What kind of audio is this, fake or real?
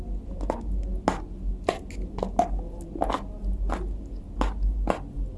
real